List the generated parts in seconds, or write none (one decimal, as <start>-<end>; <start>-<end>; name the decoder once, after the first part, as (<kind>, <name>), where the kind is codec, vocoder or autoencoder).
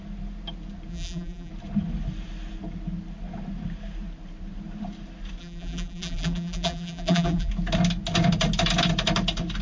0.9-1.5 (vocoder, BigVGAN v2); 5.4-7.5